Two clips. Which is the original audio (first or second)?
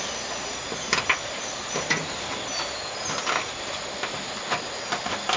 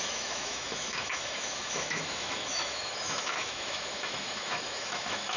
first